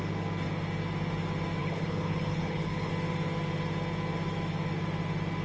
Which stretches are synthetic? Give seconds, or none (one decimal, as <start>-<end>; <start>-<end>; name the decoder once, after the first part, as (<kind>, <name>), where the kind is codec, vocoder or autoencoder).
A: 1.6-2.9 (codec, HILCodec)